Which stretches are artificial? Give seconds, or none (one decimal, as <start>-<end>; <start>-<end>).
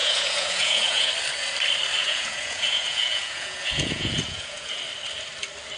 0.0-1.1; 2.0-4.8